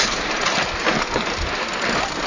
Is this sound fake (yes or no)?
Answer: no